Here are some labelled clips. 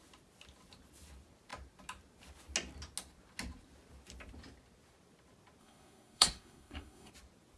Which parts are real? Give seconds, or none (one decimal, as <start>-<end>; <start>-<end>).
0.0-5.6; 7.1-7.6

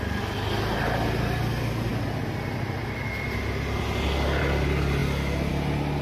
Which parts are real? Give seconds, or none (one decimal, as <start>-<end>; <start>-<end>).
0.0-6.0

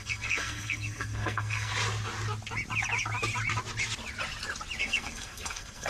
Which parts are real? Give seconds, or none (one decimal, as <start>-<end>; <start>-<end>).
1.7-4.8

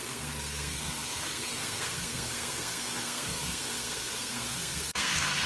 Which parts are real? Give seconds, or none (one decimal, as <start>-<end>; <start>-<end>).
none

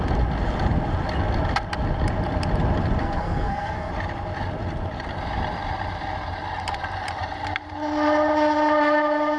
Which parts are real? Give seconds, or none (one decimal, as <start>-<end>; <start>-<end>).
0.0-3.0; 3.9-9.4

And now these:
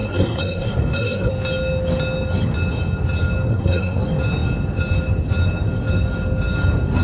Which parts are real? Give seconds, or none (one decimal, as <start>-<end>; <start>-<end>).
1.3-3.5; 4.0-7.0